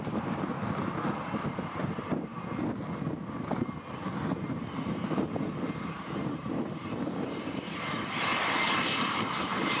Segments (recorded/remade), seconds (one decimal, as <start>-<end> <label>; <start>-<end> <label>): 0.0-2.3 remade; 2.3-5.8 recorded; 5.8-8.3 remade; 8.3-9.0 recorded; 9.0-9.8 remade